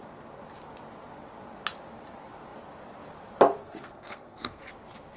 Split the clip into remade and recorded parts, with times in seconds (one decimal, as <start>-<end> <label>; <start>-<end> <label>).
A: 0.0-3.6 recorded; 3.6-4.6 remade; 4.6-5.2 recorded